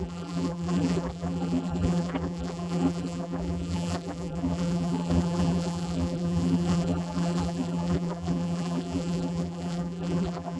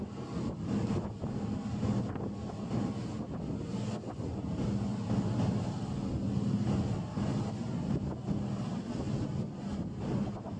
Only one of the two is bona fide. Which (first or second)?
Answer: second